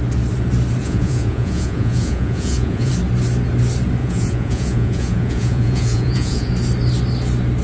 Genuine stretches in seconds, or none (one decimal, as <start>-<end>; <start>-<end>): 0.0-0.8; 2.9-4.0; 6.5-7.6